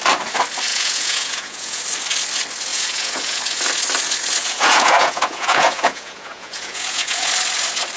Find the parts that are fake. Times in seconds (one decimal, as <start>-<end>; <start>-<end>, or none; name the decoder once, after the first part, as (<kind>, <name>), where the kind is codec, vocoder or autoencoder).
0.7-1.8 (vocoder, Vocos); 2.7-3.4; 4.4-7.3